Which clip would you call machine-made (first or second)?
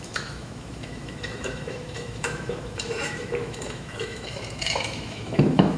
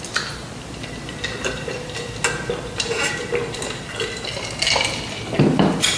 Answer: first